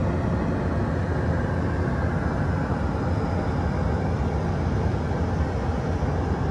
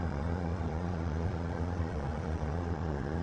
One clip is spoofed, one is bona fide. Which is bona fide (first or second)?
first